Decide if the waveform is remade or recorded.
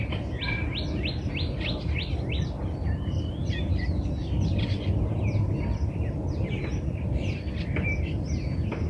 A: recorded